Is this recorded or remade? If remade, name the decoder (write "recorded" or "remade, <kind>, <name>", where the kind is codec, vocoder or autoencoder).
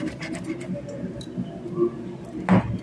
recorded